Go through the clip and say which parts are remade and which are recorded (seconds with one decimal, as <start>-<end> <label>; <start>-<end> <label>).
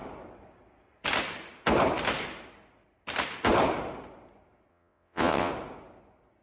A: 0.0-4.7 recorded; 4.7-5.5 remade; 5.5-6.4 recorded